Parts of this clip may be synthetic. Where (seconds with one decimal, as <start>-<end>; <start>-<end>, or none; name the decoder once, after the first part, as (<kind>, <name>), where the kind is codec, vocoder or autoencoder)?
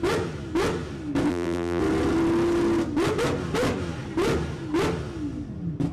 1.3-1.8 (vocoder, BigVGAN v2)